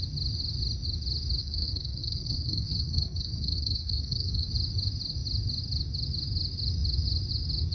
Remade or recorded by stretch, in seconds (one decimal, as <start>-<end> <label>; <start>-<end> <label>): 0.0-1.4 recorded; 1.4-4.5 remade; 4.5-7.7 recorded